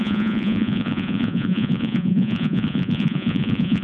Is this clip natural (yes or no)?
no